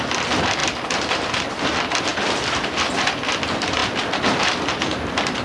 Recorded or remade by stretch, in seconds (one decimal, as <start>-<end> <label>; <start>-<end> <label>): 0.0-5.4 recorded